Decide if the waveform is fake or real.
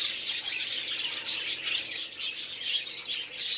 real